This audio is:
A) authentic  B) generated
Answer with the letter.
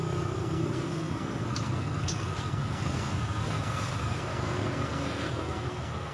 B